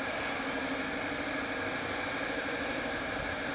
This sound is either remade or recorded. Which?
recorded